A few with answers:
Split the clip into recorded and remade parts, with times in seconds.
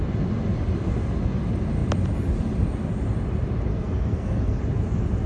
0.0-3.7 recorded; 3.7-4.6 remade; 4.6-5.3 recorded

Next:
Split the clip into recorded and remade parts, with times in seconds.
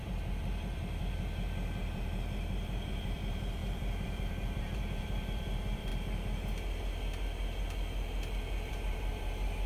0.0-5.9 remade; 5.9-8.7 recorded; 8.7-9.7 remade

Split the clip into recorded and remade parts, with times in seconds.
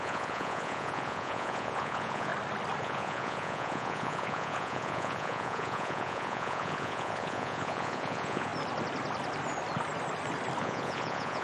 0.0-2.3 remade; 2.3-2.8 recorded; 2.8-8.5 remade; 8.5-10.6 recorded; 10.6-11.4 remade